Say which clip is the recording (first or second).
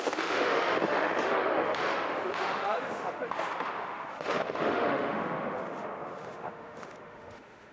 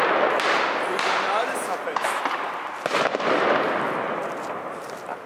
second